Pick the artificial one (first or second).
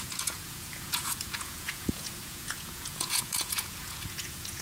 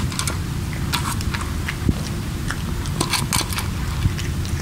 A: first